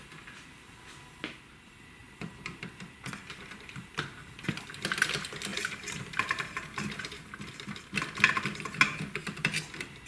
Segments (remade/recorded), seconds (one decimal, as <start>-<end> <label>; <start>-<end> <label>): 0.0-2.0 recorded; 2.0-2.7 remade; 2.7-3.2 recorded; 3.2-4.7 remade; 4.7-5.5 recorded; 5.5-7.0 remade; 7.0-10.1 recorded